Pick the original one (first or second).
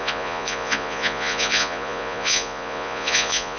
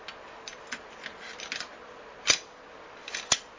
second